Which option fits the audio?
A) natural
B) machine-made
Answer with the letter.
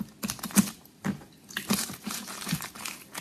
A